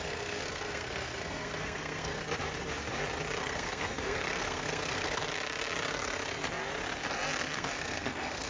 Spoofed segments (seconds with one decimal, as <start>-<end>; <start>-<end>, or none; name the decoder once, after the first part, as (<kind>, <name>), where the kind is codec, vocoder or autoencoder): 0.0-2.2 (codec, SNAC); 3.4-5.2; 7.4-8.5